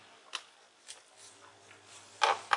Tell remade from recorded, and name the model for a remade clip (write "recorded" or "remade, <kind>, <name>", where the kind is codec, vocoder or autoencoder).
recorded